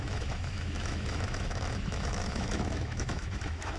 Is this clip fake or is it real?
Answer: fake